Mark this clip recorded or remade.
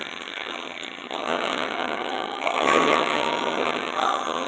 remade